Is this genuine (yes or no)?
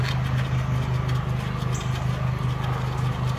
yes